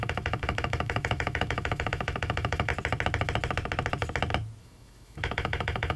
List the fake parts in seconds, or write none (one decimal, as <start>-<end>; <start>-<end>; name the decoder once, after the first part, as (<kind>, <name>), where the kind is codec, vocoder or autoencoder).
0.0-2.7 (autoencoder, DAC-VAE); 4.6-6.0

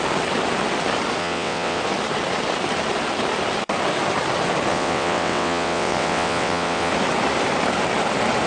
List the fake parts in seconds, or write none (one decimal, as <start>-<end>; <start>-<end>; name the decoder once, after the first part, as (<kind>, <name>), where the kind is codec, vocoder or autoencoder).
1.2-1.8 (vocoder, WaveNeXt); 4.7-6.9

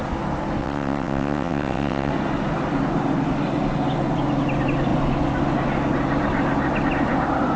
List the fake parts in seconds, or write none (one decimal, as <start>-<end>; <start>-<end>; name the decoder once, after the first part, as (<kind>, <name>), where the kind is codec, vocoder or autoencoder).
0.6-2.1 (vocoder, WaveNeXt)

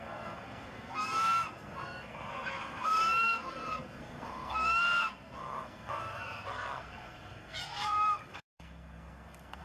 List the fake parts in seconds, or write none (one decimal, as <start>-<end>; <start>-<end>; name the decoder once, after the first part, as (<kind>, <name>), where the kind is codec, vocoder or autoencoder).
0.0-9.6 (codec, SNAC)

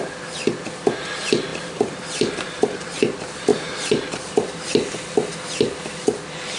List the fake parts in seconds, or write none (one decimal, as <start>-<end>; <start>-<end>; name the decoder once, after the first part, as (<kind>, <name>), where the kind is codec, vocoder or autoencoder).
1.5-3.0 (vocoder, BigVGAN v2); 3.5-4.7